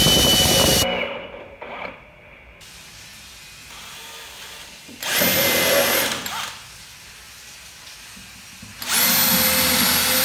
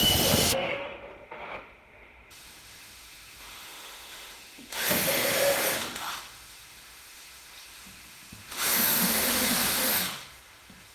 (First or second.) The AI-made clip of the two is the second